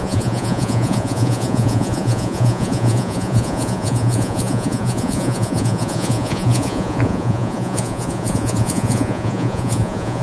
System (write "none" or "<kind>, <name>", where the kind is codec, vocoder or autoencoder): vocoder, Vocos